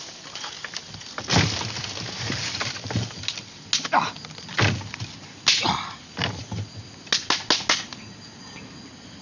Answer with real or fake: real